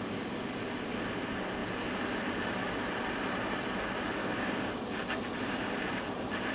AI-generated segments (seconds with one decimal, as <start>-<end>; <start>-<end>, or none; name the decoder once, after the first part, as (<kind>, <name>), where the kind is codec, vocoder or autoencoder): 4.2-4.8 (codec, DAC)